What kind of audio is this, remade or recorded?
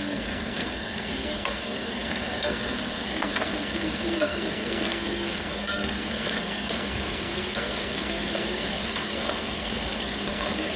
remade